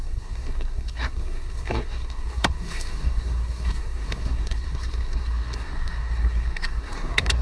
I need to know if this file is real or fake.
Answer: fake